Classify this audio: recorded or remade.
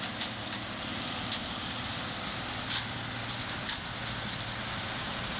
recorded